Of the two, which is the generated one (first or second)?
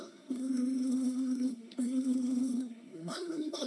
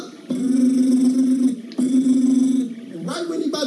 first